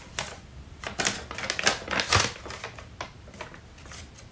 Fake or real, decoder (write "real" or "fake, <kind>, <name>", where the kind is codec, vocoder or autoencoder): real